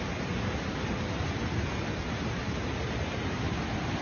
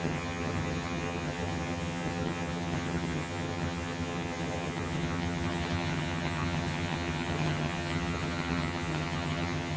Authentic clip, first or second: first